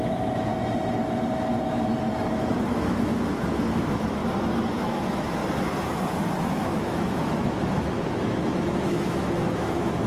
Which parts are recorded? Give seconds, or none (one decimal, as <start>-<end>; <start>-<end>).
0.5-2.3; 4.2-4.8; 5.4-6.5